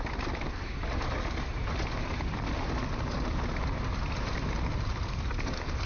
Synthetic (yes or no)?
no